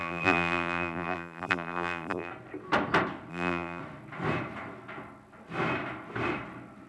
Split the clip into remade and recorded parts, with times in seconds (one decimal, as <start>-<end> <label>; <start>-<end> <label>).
0.0-2.3 remade; 2.3-3.3 recorded; 3.3-3.8 remade; 3.8-6.9 recorded